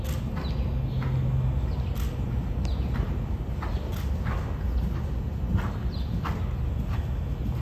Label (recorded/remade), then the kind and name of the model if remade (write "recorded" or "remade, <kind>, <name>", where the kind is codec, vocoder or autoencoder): recorded